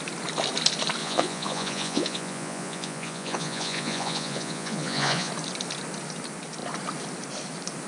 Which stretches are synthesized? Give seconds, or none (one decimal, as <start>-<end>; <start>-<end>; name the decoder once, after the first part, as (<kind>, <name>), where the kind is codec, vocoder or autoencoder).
1.0-5.3 (vocoder, Vocos)